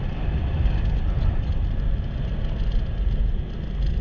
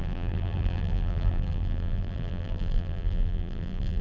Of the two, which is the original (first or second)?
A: first